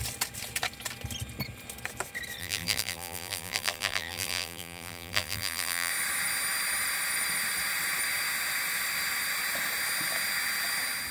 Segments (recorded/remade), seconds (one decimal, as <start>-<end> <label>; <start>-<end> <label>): 0.0-2.4 recorded; 2.4-5.9 remade; 5.9-11.1 recorded